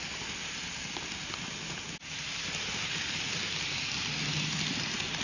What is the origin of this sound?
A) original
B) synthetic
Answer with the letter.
A